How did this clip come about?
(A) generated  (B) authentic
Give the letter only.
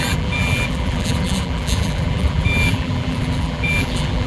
A